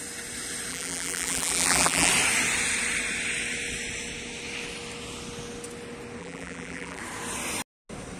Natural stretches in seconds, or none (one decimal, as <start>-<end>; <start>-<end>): 0.0-0.7; 2.1-6.2; 7.0-8.2